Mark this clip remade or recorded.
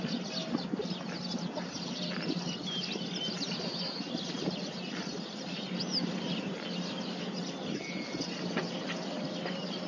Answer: recorded